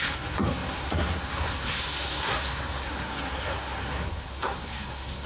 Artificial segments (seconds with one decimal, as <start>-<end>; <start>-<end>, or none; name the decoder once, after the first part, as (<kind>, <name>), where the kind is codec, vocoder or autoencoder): 0.0-5.3 (codec, SNAC)